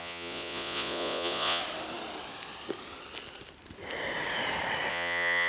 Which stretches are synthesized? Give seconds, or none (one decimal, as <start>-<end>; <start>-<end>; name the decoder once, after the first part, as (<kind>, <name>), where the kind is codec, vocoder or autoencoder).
0.0-1.6 (vocoder, Vocos); 4.9-5.5